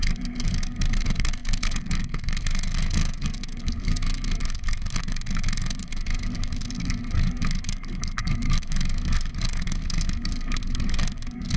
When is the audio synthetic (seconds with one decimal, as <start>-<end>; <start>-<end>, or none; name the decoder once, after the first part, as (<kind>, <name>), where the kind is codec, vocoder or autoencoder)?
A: 0.0-11.6 (codec, SNAC)